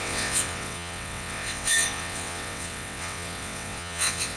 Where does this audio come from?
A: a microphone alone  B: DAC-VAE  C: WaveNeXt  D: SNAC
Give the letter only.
C